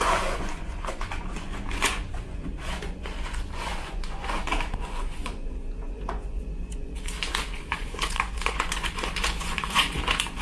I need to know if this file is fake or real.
fake